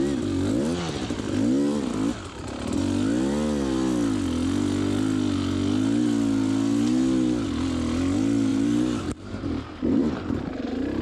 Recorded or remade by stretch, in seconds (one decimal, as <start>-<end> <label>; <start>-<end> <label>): 0.0-8.5 recorded; 8.5-10.1 remade; 10.1-11.0 recorded